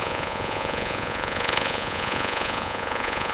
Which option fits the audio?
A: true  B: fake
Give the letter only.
B